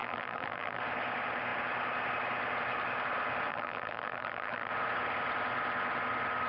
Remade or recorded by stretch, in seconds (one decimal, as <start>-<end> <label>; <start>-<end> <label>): 0.0-0.8 remade; 0.8-3.5 recorded; 3.5-4.7 remade; 4.7-6.5 recorded